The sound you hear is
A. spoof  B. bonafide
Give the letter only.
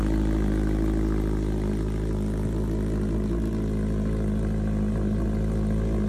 B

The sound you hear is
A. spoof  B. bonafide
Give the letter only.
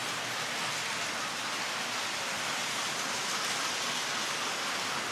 B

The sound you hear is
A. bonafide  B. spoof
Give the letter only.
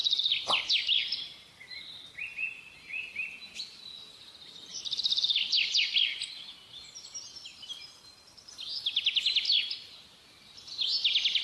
A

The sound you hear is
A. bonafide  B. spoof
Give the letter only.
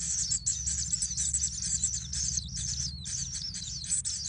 A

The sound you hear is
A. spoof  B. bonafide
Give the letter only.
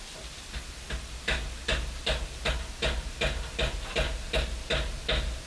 B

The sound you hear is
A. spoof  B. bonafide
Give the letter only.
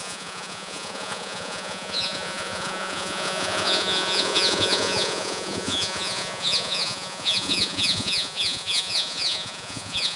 A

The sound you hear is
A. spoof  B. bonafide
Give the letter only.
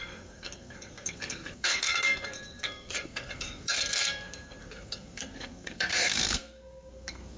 A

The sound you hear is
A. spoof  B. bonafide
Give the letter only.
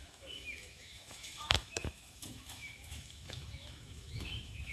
A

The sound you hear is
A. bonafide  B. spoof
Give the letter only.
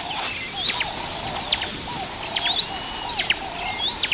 A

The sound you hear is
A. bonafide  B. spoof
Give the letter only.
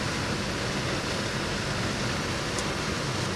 A